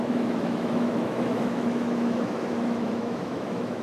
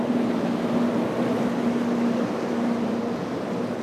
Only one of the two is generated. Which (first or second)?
first